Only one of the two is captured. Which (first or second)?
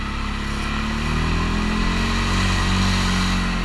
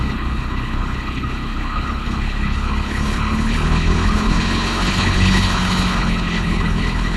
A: first